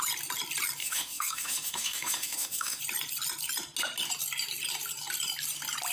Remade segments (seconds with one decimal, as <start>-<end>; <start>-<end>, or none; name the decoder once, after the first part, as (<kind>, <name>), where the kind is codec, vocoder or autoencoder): 0.8-2.8 (autoencoder, DAC-VAE)